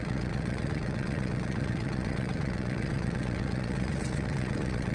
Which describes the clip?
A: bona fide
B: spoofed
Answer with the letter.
B